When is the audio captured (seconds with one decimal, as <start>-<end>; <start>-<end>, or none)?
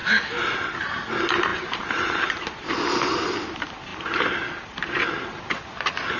0.0-1.5; 2.7-3.9; 5.4-6.2